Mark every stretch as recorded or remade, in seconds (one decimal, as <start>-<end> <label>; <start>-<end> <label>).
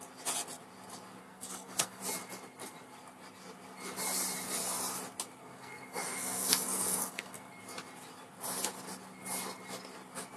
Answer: 0.0-1.2 recorded; 1.2-2.0 remade; 2.0-5.4 recorded; 5.4-7.5 remade; 7.5-10.4 recorded